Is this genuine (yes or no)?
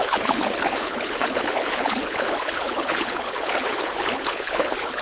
no